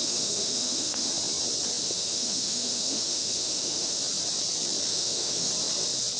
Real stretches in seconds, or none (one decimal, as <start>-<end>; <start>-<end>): 1.1-1.8; 4.0-4.9; 5.5-6.2